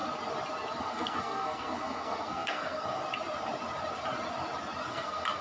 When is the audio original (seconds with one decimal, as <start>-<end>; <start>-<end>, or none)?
0.0-0.8; 3.0-4.9